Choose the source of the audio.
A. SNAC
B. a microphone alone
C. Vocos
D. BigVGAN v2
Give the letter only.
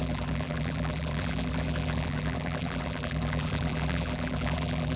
D